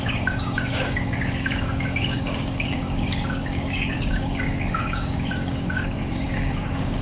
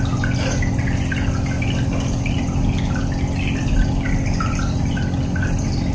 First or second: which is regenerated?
first